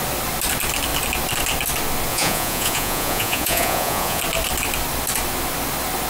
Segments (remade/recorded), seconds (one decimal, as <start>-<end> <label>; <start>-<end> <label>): 0.0-2.1 recorded; 2.1-4.2 remade; 4.2-6.1 recorded